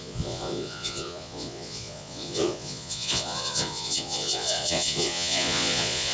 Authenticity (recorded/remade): remade